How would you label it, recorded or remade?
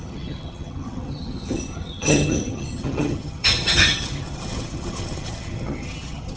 remade